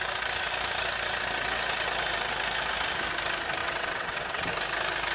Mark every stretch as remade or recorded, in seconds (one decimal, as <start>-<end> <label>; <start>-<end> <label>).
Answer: 0.0-3.6 recorded; 3.6-4.5 remade; 4.5-5.1 recorded

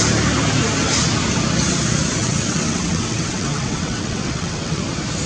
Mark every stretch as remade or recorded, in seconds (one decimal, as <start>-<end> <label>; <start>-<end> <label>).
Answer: 0.0-2.2 recorded; 2.2-4.8 remade; 4.8-5.3 recorded

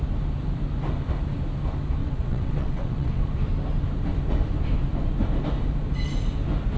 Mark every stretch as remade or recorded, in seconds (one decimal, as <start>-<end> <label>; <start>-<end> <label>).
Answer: 0.0-2.0 recorded; 2.0-3.2 remade; 3.2-6.8 recorded

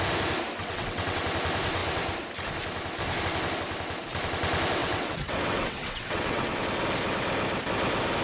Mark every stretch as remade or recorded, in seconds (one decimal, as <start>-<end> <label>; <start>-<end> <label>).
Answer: 0.0-0.6 recorded; 0.6-1.2 remade; 1.2-4.8 recorded; 4.8-6.6 remade; 6.6-8.2 recorded

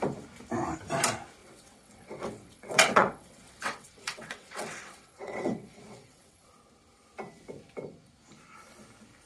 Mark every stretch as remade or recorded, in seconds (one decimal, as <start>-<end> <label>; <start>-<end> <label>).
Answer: 0.0-1.4 recorded; 1.4-6.5 remade; 6.5-9.3 recorded

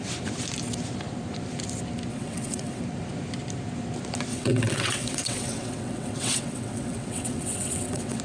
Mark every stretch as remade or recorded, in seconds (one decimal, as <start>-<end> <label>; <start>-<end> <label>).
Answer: 0.0-2.1 recorded; 2.1-2.8 remade; 2.8-4.3 recorded; 4.3-8.2 remade

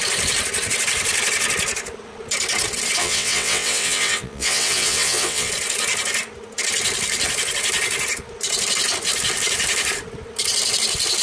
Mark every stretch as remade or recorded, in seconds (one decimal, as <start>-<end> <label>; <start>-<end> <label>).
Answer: 0.0-3.0 recorded; 3.0-5.5 remade; 5.5-11.2 recorded